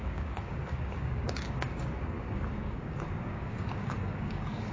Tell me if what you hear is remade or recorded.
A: remade